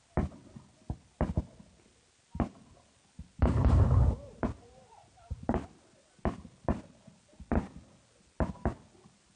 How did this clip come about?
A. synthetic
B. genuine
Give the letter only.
B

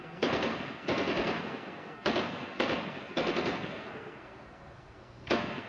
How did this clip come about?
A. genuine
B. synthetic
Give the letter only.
B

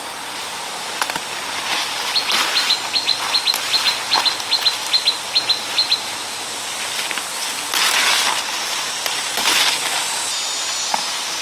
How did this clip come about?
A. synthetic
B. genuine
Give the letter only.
B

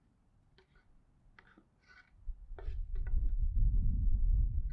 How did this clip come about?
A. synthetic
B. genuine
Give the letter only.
B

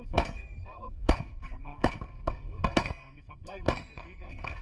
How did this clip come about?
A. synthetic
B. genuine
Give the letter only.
A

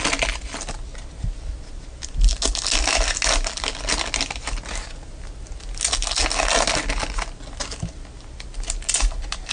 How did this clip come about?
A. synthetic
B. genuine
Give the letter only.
B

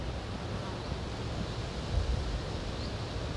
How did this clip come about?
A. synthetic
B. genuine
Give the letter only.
B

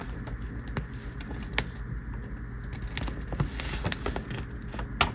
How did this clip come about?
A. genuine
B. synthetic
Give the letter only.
A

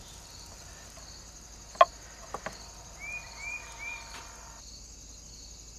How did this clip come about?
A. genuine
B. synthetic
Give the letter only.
A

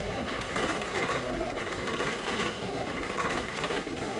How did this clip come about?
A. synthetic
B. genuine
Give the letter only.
A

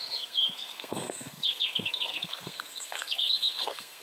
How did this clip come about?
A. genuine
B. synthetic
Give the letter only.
B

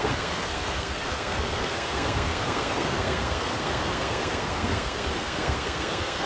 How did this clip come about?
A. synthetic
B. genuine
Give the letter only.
A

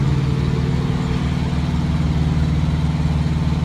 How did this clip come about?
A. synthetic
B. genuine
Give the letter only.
B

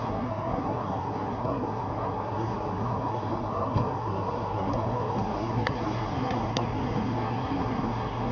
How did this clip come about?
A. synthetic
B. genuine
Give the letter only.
A